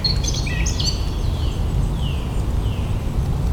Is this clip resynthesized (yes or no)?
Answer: no